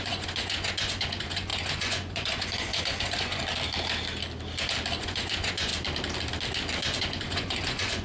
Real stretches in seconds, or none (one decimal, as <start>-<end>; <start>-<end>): 3.4-5.0; 5.7-7.0